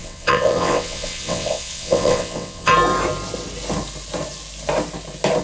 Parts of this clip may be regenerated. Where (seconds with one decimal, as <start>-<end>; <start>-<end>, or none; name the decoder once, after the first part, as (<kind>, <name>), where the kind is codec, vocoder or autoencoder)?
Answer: 0.0-2.7 (vocoder, WaveNeXt)